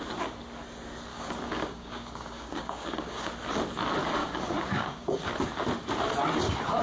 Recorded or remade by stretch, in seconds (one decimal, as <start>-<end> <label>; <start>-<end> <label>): 0.0-1.1 recorded; 1.1-3.3 remade; 3.3-4.2 recorded; 4.2-5.2 remade; 5.2-6.8 recorded